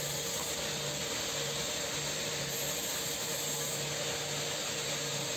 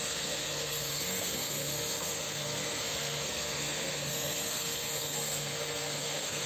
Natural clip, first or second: first